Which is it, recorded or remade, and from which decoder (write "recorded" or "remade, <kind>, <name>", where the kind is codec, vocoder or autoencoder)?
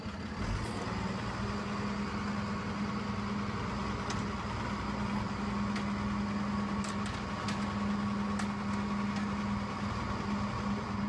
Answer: recorded